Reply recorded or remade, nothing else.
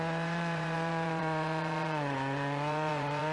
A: remade